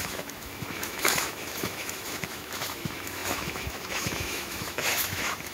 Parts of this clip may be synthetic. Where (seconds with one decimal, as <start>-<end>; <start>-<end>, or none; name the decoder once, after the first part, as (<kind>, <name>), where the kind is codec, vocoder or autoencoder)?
0.0-5.5 (autoencoder, DAC-VAE)